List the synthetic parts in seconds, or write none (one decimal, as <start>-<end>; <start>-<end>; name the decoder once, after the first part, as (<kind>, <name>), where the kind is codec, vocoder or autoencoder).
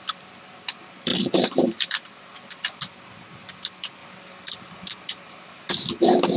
1.1-2.1 (vocoder, BigVGAN v2); 4.0-5.7